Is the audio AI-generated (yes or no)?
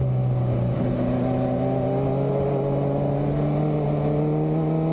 no